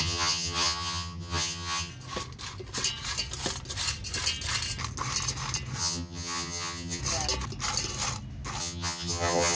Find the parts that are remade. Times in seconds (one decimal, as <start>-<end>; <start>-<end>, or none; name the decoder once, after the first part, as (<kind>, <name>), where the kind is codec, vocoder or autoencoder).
0.0-1.9 (vocoder, HiFi-GAN); 5.8-7.0; 8.6-9.5